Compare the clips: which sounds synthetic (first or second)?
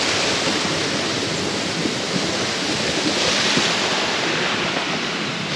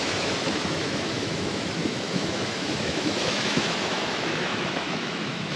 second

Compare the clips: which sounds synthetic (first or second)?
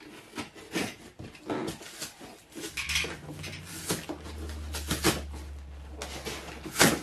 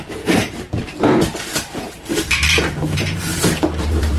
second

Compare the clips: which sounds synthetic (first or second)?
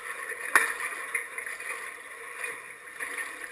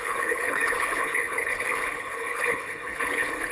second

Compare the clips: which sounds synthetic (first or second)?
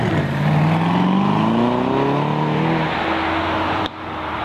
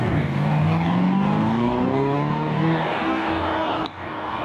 second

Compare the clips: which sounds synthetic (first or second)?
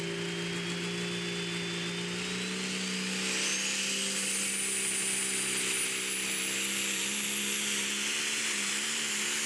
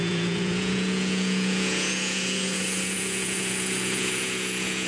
second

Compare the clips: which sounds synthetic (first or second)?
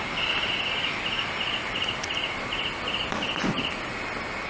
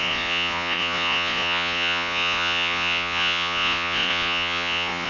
second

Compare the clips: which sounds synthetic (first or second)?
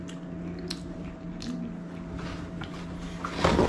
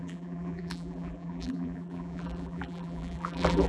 second